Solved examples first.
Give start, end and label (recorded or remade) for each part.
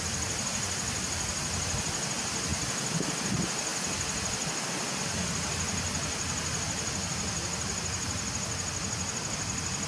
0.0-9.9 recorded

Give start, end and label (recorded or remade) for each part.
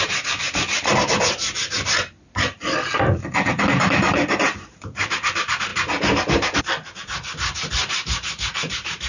0.0-0.9 remade; 0.9-4.1 recorded; 4.1-5.7 remade; 5.7-6.6 recorded; 6.6-9.1 remade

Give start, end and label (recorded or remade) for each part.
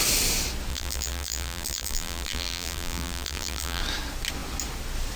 0.0-0.7 recorded; 0.7-3.8 remade; 3.8-5.2 recorded